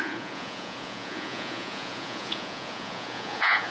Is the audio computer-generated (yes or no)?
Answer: yes